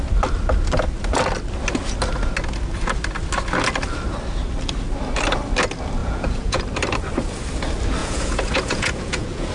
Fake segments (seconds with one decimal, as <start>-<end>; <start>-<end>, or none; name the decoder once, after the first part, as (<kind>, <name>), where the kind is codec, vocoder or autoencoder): 6.0-6.6 (vocoder, Vocos); 8.0-9.5